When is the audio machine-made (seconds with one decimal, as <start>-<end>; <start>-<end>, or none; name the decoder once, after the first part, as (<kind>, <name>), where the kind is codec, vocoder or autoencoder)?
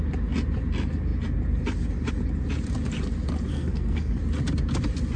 3.5-4.1 (codec, SNAC)